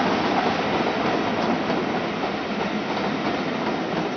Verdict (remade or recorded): recorded